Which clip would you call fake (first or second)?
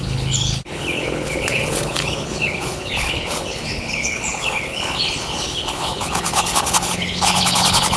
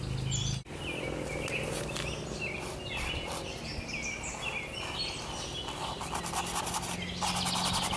first